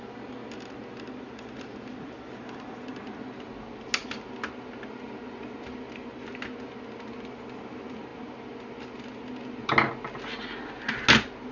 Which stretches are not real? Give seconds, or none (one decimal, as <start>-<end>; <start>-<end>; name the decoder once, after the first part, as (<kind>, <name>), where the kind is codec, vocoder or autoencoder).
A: none